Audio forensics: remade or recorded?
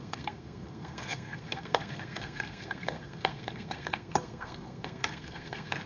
remade